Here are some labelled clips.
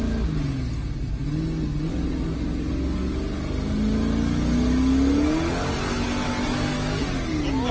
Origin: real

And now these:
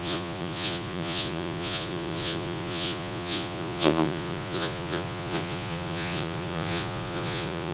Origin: fake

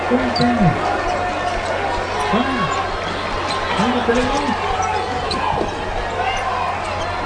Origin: real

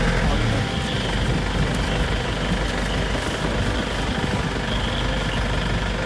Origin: real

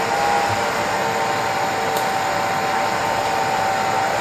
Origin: real